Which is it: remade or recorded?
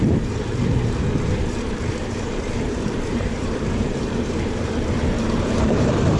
remade